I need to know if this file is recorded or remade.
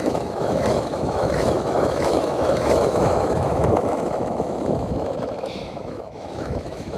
remade